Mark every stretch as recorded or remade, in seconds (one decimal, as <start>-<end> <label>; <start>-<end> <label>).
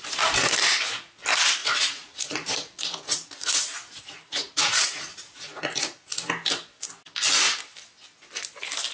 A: 0.0-1.6 recorded; 1.6-6.2 remade; 6.2-8.9 recorded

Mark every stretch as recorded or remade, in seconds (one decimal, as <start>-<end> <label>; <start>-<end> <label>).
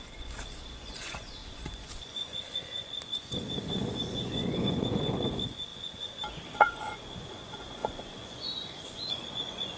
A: 0.0-9.8 remade